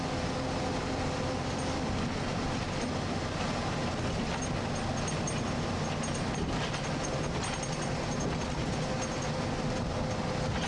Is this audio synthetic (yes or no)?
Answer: no